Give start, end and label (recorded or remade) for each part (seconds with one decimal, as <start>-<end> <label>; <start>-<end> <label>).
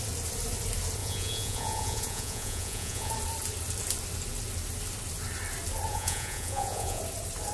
0.0-1.0 recorded; 1.0-3.1 remade; 3.1-5.9 recorded; 5.9-7.0 remade; 7.0-7.5 recorded